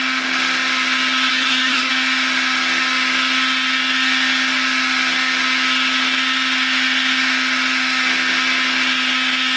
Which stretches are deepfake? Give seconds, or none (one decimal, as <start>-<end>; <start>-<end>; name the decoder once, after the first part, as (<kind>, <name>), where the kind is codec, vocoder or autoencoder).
1.3-1.9 (codec, SNAC)